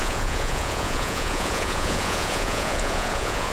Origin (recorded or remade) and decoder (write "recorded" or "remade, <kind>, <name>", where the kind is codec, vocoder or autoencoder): remade, vocoder, Vocos